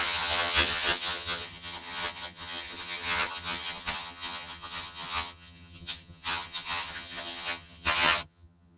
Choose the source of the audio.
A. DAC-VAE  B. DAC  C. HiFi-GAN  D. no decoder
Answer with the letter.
C